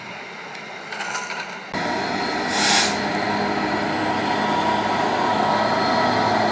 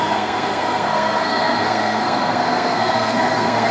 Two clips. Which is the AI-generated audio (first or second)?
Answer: second